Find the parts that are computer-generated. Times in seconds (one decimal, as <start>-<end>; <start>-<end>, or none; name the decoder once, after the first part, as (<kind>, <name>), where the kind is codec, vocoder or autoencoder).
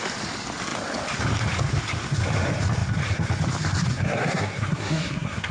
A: 3.9-5.5 (codec, SNAC)